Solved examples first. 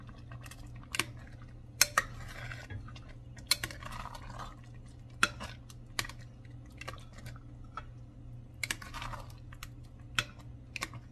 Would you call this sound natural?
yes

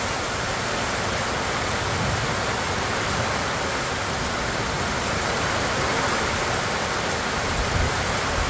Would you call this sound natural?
yes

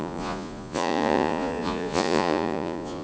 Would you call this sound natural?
no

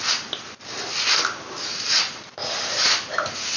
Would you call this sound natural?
yes